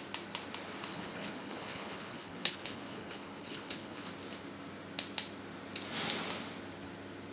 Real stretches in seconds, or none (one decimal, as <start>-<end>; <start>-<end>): 0.0-0.9; 4.1-7.3